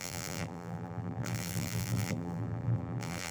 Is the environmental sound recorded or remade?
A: remade